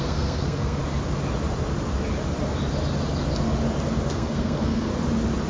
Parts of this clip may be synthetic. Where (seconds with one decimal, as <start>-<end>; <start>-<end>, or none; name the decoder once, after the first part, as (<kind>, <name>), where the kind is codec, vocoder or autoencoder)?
0.0-0.8 (codec, SNAC); 4.1-4.9